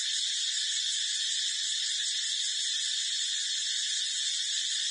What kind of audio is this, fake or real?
real